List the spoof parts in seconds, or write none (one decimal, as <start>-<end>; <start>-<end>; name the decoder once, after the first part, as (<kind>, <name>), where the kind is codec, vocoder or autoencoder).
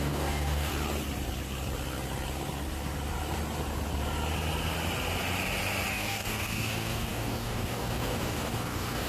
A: 0.0-0.7 (codec, DAC); 5.9-9.1